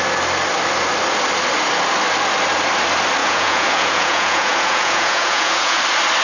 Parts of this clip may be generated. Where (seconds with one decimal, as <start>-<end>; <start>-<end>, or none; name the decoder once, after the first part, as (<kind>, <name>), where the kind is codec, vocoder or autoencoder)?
3.2-5.8 (vocoder, Vocos)